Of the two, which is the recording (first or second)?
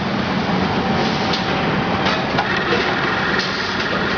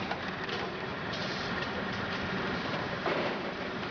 first